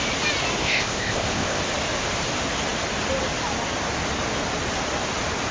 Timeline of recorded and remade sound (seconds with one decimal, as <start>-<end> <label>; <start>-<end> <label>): 0.0-0.6 recorded; 0.6-1.6 remade; 1.6-5.5 recorded